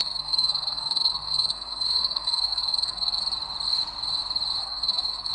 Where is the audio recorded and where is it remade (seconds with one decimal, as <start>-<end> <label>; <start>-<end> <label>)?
0.0-3.2 remade; 3.2-4.6 recorded; 4.6-5.3 remade